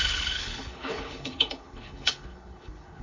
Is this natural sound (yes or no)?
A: no